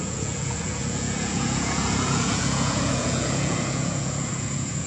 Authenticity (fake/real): fake